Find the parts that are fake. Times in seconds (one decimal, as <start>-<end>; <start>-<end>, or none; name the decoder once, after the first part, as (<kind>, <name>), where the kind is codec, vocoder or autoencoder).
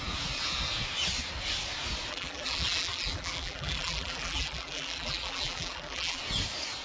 2.1-6.2 (vocoder, BigVGAN v2)